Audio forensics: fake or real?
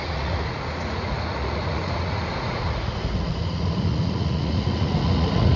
fake